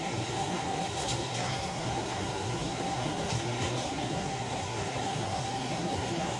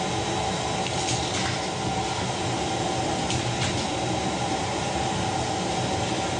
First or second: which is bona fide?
second